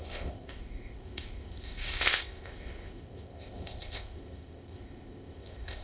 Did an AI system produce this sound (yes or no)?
yes